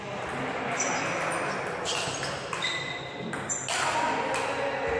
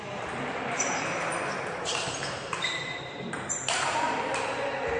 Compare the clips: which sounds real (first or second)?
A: first